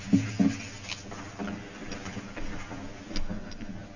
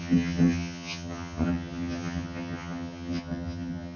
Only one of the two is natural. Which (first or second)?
first